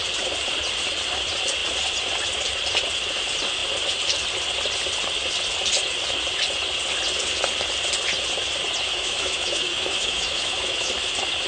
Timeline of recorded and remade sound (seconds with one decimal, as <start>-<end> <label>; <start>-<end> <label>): 0.0-8.9 recorded; 8.9-10.9 remade; 10.9-11.5 recorded